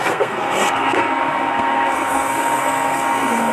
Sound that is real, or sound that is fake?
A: fake